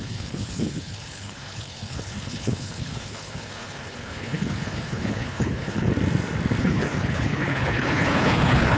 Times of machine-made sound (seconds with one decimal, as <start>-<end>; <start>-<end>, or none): 0.0-5.9; 6.6-8.8